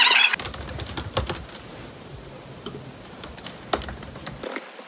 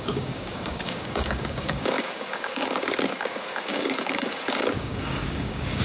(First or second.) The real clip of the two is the first